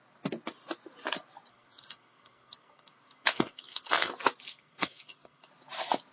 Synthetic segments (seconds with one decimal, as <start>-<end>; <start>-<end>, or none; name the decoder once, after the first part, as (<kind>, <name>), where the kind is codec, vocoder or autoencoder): 1.5-4.1 (codec, SNAC); 4.5-5.5